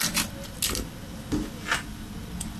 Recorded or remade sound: recorded